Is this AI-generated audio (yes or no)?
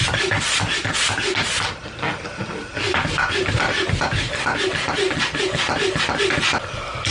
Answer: no